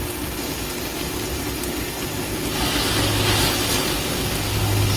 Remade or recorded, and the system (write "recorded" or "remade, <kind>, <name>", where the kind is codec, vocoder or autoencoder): recorded